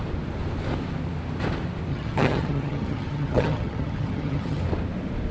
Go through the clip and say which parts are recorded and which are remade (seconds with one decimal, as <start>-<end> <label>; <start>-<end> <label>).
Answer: 0.0-1.9 recorded; 1.9-4.6 remade; 4.6-5.3 recorded